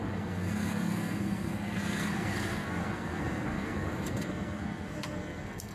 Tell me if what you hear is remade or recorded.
remade